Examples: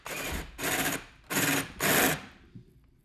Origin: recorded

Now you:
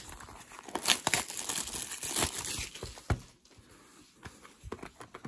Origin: recorded